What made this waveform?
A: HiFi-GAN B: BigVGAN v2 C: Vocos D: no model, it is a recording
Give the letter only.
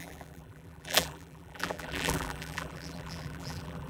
B